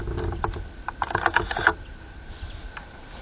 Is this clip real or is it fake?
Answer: real